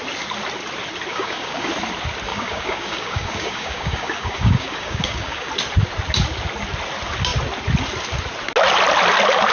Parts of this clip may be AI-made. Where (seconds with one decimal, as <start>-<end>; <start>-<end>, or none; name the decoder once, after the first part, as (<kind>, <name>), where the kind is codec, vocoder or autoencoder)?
1.1-1.7 (codec, DAC); 2.3-5.5